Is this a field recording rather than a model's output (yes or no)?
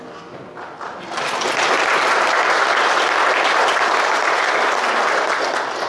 yes